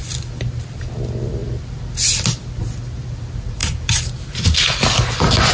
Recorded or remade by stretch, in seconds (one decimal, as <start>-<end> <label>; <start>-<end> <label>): 0.0-1.4 recorded; 1.4-2.6 remade; 2.6-3.6 recorded; 3.6-4.3 remade; 4.3-5.5 recorded